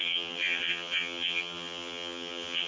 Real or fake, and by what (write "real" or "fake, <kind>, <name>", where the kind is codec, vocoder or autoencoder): fake, vocoder, HiFi-GAN